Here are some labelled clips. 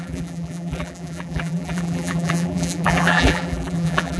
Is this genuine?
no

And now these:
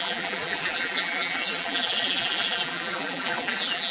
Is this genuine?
no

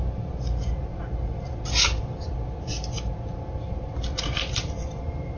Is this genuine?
yes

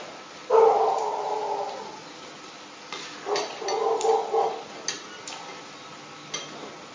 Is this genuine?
yes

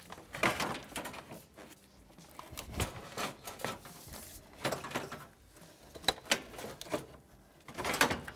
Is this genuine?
yes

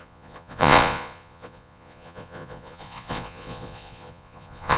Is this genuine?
no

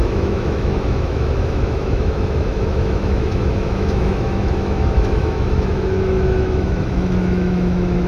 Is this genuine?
no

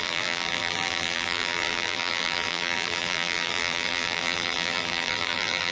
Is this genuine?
no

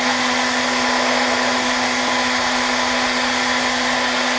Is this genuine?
yes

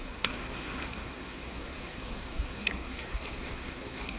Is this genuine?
no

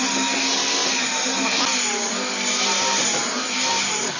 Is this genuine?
yes